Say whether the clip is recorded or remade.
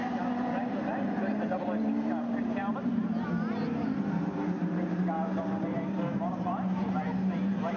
remade